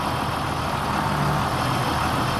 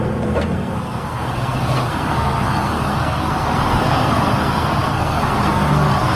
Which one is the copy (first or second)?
second